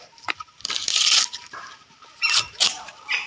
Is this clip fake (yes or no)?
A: yes